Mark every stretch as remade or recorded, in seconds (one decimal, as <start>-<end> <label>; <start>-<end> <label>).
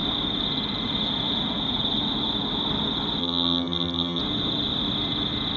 0.0-3.2 recorded; 3.2-4.2 remade; 4.2-5.6 recorded